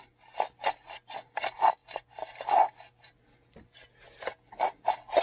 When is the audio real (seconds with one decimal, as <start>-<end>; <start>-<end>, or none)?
0.0-5.2